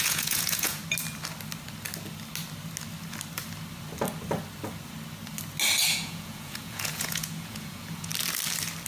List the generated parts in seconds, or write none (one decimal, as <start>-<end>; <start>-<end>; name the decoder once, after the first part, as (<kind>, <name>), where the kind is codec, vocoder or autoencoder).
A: 0.0-0.8 (vocoder, Vocos); 5.9-8.1